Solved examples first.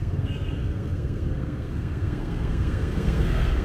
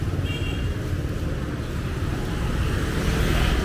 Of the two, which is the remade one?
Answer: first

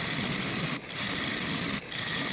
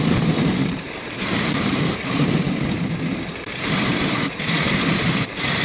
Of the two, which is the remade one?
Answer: second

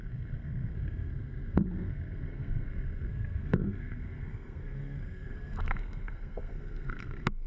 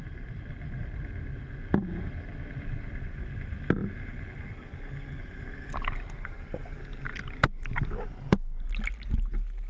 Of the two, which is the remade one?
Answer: first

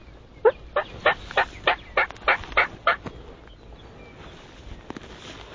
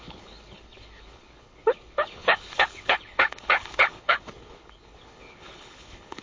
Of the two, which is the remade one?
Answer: second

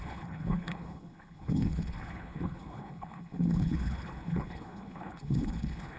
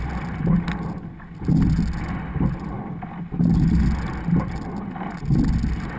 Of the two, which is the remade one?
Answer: first